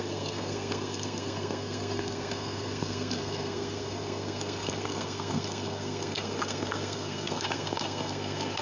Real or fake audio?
fake